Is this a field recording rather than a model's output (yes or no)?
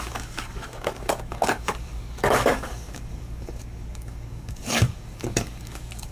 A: no